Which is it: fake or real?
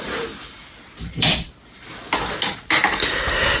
real